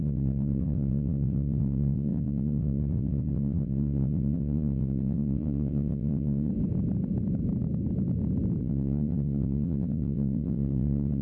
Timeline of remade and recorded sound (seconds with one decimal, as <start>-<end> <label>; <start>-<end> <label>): 0.0-6.5 remade; 6.5-8.6 recorded; 8.6-11.2 remade